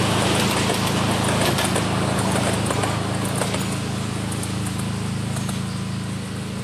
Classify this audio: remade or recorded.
recorded